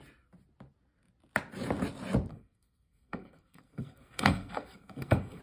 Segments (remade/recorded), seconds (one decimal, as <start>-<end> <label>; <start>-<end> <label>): 0.0-2.3 recorded; 2.3-5.4 remade